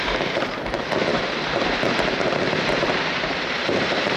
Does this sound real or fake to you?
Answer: fake